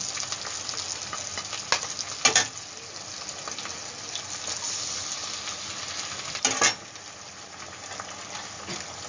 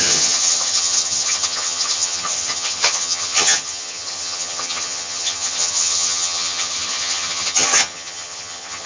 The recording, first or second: first